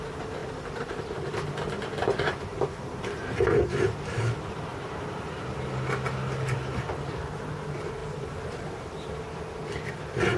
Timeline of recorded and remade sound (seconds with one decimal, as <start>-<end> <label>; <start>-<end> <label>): 0.0-2.5 recorded; 2.5-3.5 remade; 3.5-10.4 recorded